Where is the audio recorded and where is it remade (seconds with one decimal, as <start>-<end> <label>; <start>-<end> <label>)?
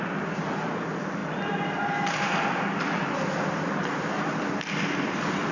0.0-5.5 recorded